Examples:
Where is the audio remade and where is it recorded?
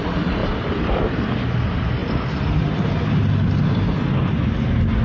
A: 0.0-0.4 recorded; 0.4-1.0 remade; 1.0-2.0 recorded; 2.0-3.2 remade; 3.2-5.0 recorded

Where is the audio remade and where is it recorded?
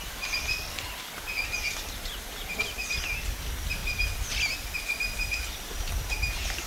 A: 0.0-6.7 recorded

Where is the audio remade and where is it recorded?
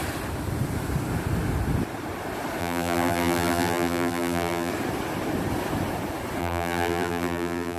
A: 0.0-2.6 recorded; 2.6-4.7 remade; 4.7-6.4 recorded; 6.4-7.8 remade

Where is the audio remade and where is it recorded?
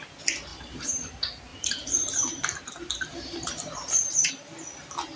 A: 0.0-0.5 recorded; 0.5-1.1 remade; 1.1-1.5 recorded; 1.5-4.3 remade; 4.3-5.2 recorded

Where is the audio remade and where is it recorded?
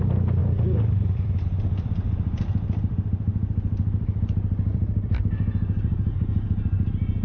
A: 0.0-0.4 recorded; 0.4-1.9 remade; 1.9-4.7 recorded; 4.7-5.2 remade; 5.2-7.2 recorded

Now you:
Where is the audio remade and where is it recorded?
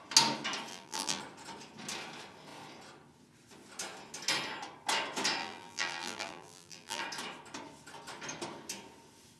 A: 0.0-0.7 recorded; 0.7-1.2 remade; 1.2-5.4 recorded; 5.4-7.0 remade; 7.0-9.4 recorded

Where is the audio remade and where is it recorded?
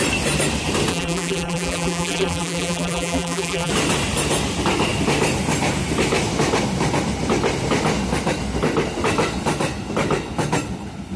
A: 0.0-0.9 recorded; 0.9-3.7 remade; 3.7-11.2 recorded